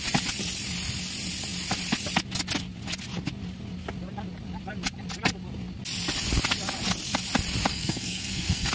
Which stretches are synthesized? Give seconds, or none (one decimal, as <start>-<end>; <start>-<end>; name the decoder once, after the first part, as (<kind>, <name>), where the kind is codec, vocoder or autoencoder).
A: 7.7-8.7 (codec, SNAC)